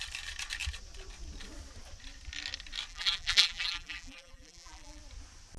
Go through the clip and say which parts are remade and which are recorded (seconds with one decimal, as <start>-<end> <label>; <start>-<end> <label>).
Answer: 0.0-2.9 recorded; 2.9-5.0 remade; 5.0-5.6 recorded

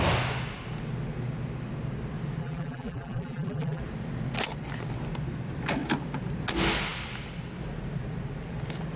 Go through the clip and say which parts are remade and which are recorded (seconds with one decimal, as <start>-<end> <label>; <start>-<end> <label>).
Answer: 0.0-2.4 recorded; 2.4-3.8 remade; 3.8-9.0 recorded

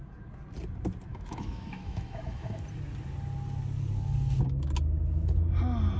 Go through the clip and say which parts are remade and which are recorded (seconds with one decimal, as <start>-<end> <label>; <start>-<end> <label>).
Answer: 0.0-1.1 recorded; 1.1-2.6 remade; 2.6-6.0 recorded